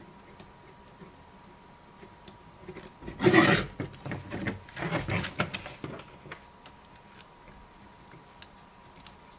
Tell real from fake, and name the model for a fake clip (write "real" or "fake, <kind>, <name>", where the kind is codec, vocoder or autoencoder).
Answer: real